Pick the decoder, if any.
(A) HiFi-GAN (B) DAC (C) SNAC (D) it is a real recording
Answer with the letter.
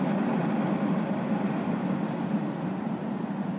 D